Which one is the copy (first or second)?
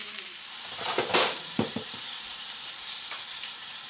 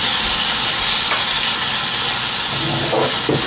first